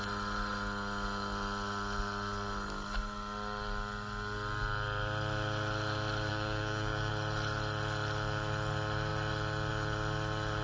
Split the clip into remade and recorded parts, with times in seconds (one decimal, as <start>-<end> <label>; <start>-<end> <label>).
0.0-6.3 recorded; 6.3-7.1 remade; 7.1-10.6 recorded